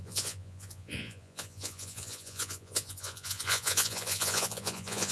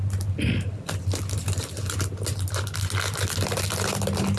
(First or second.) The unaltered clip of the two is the second